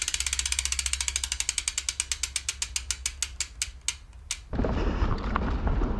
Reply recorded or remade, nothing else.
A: recorded